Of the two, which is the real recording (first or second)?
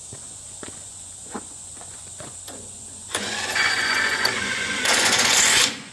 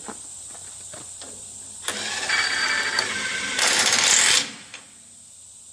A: second